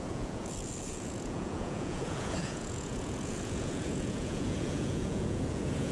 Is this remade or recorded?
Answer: remade